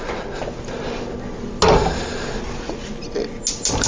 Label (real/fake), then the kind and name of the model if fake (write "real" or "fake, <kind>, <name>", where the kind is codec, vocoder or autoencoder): real